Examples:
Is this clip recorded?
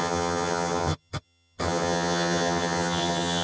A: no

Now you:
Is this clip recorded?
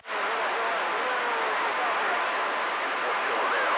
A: yes